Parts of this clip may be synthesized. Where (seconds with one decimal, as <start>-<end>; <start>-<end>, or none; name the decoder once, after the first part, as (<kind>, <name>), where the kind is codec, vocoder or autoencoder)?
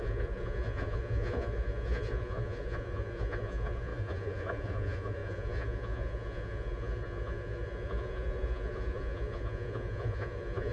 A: 0.0-10.7 (vocoder, Vocos)